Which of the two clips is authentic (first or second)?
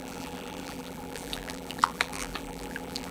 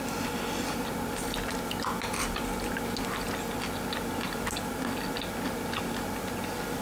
second